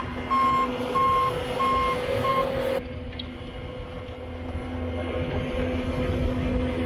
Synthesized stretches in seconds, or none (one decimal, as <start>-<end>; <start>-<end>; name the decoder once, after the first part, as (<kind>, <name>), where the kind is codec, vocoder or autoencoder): none